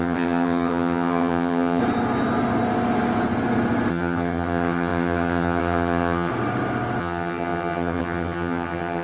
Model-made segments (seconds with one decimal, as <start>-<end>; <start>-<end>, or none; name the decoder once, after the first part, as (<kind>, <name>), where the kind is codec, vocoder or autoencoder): 0.0-1.8 (vocoder, HiFi-GAN); 3.9-6.3; 7.0-9.0